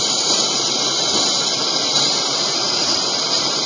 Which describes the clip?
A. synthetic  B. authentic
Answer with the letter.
A